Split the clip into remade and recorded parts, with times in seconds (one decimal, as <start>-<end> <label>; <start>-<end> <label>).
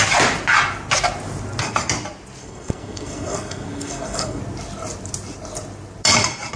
0.0-2.4 recorded; 2.4-4.4 remade; 4.4-6.6 recorded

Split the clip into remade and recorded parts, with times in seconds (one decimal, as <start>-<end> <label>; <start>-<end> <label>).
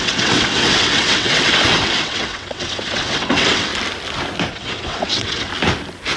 0.0-3.7 remade; 3.7-4.5 recorded; 4.5-5.5 remade; 5.5-6.2 recorded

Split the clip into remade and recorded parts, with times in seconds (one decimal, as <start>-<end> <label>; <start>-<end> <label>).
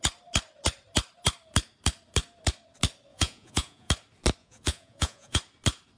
0.0-3.1 recorded; 3.1-3.9 remade; 3.9-4.4 recorded; 4.4-5.4 remade; 5.4-6.0 recorded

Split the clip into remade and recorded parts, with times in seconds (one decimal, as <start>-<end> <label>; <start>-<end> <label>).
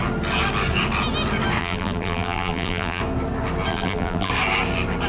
0.0-1.6 recorded; 1.6-3.0 remade; 3.0-3.7 recorded; 3.7-4.3 remade; 4.3-5.1 recorded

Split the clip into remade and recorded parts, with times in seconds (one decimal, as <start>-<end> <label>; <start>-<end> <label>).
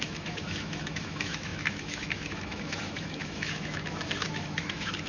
0.0-5.1 remade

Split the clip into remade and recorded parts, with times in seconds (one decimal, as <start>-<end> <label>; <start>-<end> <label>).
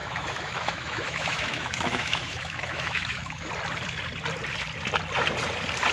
0.0-3.5 remade; 3.5-5.9 recorded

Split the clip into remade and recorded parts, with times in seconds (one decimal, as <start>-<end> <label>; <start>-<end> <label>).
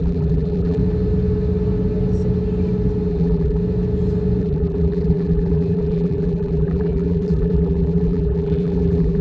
0.0-0.8 remade; 0.8-3.1 recorded; 3.1-3.6 remade; 3.6-4.4 recorded; 4.4-9.2 remade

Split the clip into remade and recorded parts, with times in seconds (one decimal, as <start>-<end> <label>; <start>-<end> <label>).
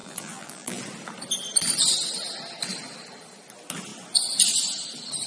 0.0-0.8 remade; 0.8-5.3 recorded